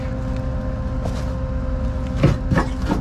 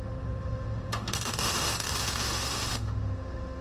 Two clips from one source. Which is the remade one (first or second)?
second